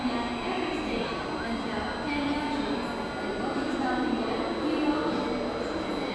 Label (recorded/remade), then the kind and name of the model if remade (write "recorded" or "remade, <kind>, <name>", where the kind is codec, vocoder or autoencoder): recorded